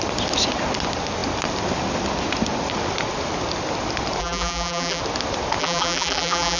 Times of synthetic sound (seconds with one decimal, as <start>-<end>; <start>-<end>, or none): 4.2-5.0; 5.6-6.6